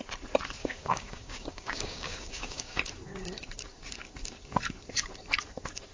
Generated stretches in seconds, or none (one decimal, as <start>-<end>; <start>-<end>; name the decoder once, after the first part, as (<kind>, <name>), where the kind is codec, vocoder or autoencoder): 0.6-2.8 (codec, DAC)